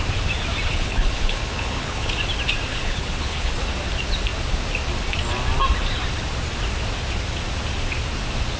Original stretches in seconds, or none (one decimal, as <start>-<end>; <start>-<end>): 0.0-0.7; 2.1-2.7; 3.5-8.6